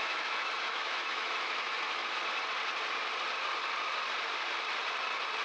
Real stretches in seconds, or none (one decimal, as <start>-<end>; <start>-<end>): 2.0-5.4